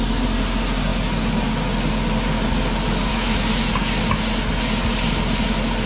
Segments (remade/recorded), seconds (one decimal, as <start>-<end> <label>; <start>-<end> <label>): 0.0-3.1 recorded; 3.1-3.7 remade; 3.7-5.9 recorded

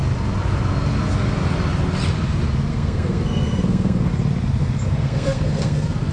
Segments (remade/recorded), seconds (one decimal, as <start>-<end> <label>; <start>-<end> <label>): 0.0-2.7 recorded; 2.7-4.1 remade; 4.1-4.6 recorded; 4.6-6.1 remade

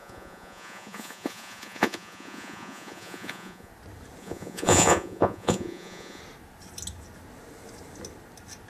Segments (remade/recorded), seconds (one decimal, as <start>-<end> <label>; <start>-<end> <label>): 0.0-3.7 remade; 3.7-4.2 recorded; 4.2-6.2 remade; 6.2-8.7 recorded

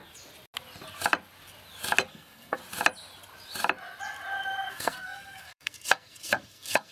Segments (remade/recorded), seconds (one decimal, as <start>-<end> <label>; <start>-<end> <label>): 0.0-2.1 recorded; 2.1-2.6 remade; 2.6-4.7 recorded; 4.7-6.9 remade

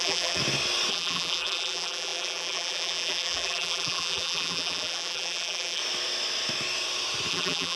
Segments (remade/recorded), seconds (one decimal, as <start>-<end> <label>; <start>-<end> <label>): 0.0-0.4 remade; 0.4-0.9 recorded; 0.9-5.8 remade; 5.8-7.3 recorded; 7.3-7.8 remade

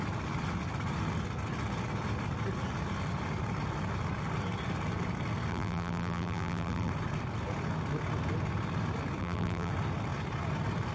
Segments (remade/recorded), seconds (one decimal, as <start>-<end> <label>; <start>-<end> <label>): 0.0-5.5 recorded; 5.5-6.9 remade; 6.9-9.2 recorded; 9.2-9.7 remade; 9.7-10.9 recorded

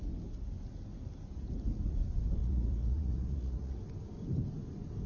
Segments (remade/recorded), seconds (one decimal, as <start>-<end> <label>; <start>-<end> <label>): 0.0-2.4 recorded; 2.4-3.8 remade; 3.8-5.1 recorded

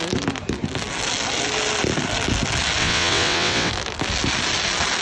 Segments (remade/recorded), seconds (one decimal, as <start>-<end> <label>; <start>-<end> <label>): 0.0-2.8 recorded; 2.8-3.7 remade; 3.7-5.0 recorded